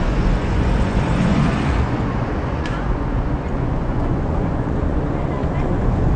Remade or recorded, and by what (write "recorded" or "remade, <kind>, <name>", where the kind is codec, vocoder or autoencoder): remade, vocoder, Vocos